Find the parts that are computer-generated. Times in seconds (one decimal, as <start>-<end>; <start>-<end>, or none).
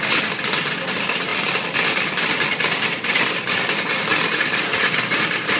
none